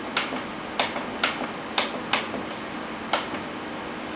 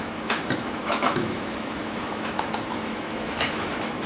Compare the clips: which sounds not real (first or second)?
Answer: second